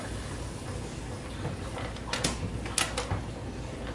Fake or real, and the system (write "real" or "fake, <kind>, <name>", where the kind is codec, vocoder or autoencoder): real